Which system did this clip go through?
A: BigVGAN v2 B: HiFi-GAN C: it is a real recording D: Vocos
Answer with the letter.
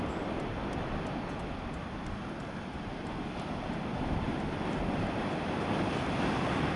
C